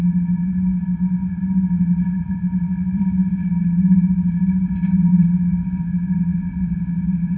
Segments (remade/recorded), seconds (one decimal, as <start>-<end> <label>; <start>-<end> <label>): 0.0-2.2 recorded; 2.2-3.3 remade; 3.3-5.1 recorded; 5.1-6.1 remade; 6.1-7.4 recorded

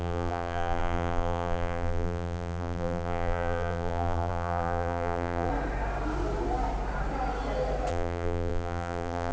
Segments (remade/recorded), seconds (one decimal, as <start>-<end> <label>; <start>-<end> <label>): 0.0-5.5 remade; 5.5-7.9 recorded; 7.9-9.3 remade

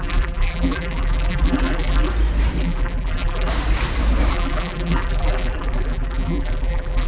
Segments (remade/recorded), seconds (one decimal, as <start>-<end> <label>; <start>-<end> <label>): 0.0-2.1 remade; 2.1-2.6 recorded; 2.6-3.5 remade; 3.5-4.3 recorded; 4.3-7.1 remade

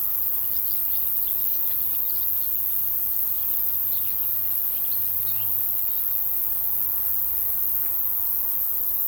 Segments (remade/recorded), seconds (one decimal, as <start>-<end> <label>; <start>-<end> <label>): 0.0-9.1 recorded

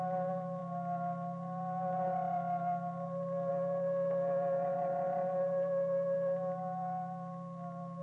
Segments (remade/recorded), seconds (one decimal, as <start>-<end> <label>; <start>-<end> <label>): 0.0-8.0 recorded

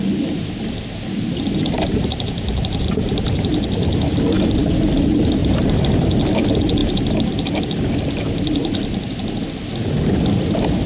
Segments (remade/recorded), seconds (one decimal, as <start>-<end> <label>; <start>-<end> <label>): 0.0-2.1 recorded; 2.1-3.5 remade; 3.5-5.4 recorded; 5.4-6.1 remade; 6.1-6.8 recorded; 6.8-7.3 remade; 7.3-10.9 recorded